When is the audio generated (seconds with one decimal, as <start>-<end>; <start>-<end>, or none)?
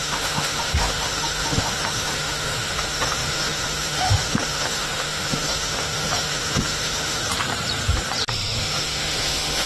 0.0-7.2; 8.6-9.7